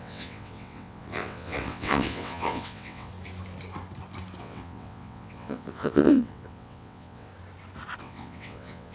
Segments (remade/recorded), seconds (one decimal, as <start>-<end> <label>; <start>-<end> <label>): 0.0-3.1 remade; 3.1-4.4 recorded; 4.4-7.3 remade; 7.3-8.0 recorded; 8.0-8.9 remade